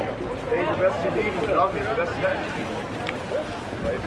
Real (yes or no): yes